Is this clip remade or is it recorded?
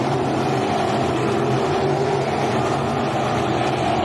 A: recorded